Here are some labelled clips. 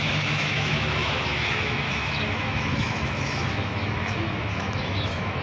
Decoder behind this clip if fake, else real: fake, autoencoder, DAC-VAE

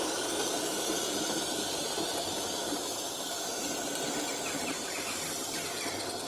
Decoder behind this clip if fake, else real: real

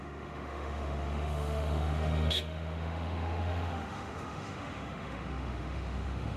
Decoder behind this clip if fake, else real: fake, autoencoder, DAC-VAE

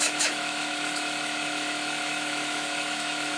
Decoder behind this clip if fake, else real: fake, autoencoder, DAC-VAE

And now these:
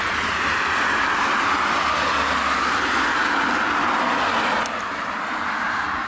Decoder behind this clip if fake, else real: real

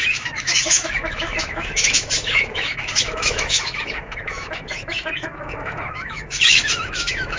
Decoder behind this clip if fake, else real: fake, autoencoder, DAC-VAE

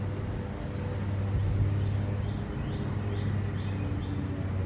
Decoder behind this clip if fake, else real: real